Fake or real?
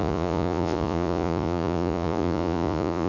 fake